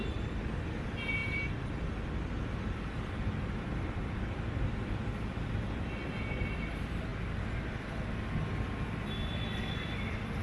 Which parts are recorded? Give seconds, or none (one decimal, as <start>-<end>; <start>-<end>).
7.1-9.0